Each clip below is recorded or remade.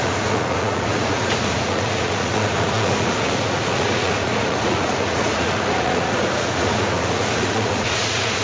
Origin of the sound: remade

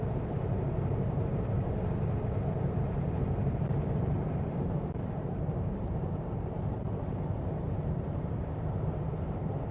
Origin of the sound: remade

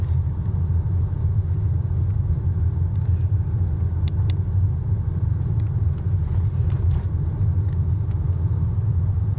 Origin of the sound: recorded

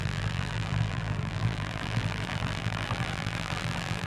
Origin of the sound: remade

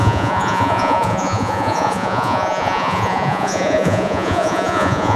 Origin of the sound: remade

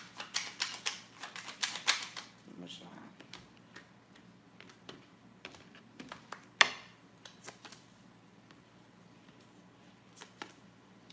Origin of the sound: recorded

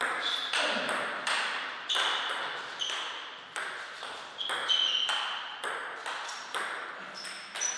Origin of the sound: recorded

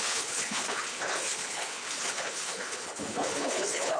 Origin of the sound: remade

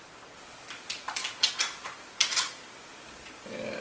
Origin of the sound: recorded